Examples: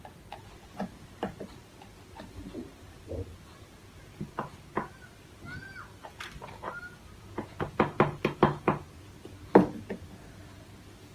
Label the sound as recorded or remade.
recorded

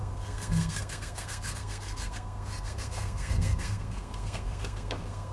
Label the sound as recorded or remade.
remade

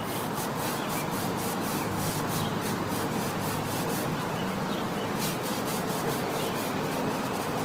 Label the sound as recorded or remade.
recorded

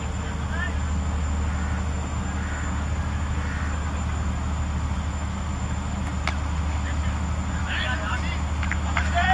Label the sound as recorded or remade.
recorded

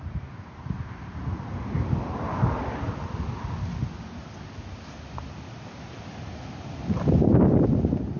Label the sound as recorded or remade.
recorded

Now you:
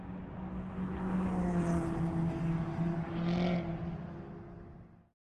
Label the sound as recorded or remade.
recorded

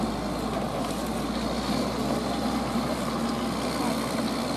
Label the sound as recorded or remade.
recorded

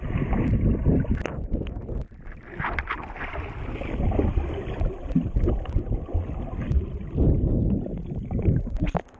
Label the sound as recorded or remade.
recorded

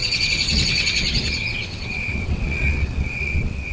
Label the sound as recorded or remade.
remade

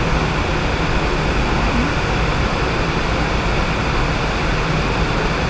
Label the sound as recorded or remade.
recorded